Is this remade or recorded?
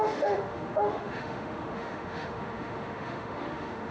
remade